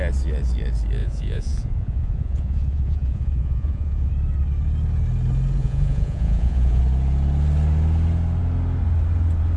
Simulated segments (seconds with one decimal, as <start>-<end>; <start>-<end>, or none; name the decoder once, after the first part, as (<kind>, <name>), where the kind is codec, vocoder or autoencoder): 1.0-4.1 (vocoder, Vocos); 5.6-6.8